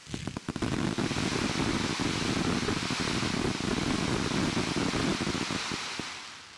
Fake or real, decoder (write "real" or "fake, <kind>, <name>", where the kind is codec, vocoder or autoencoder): real